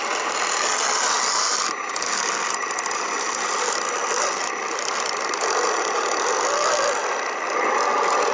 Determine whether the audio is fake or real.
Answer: real